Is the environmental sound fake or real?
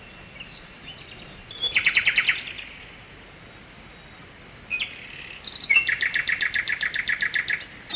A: real